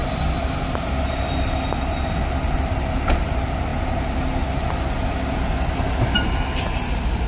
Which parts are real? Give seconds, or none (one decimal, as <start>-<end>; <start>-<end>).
0.0-7.3